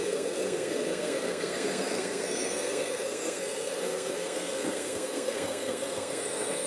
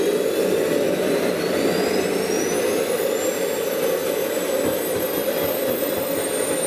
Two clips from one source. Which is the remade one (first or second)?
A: first